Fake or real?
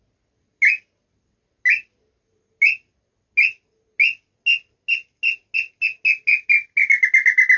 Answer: real